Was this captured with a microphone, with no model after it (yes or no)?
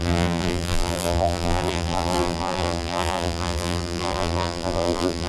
no